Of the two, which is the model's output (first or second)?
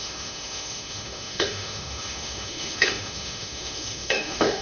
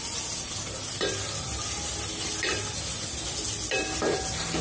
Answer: first